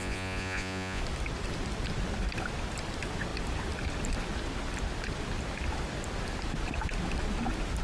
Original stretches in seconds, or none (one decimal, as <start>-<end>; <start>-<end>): 1.0-7.8